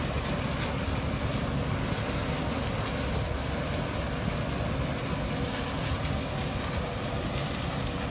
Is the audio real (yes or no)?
yes